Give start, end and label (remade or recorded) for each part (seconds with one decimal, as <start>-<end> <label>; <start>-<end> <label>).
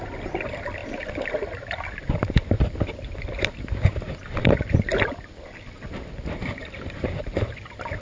0.0-8.0 recorded